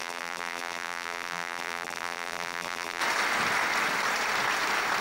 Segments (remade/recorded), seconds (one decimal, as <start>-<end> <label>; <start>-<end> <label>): 0.0-3.0 remade; 3.0-5.0 recorded